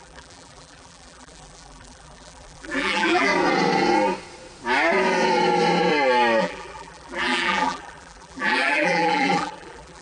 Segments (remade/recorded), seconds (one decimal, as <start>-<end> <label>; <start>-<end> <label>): 0.0-3.3 remade; 3.3-6.4 recorded; 6.4-10.0 remade